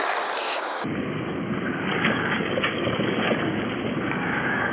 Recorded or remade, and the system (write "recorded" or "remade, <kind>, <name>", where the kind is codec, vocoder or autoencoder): remade, codec, DAC